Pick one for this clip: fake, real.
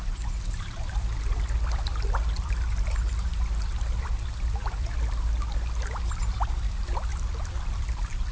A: real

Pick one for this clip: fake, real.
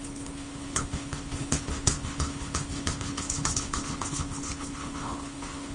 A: fake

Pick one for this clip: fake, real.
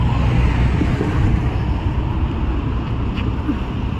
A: real